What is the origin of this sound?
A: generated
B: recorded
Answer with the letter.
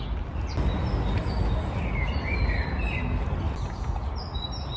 B